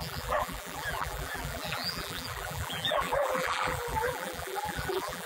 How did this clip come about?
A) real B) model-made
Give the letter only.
B